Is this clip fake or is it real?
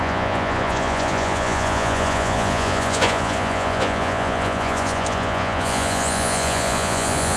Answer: fake